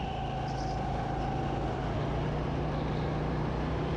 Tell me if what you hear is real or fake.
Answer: real